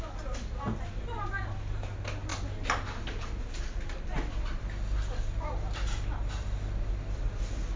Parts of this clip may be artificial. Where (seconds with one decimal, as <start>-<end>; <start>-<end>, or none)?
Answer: none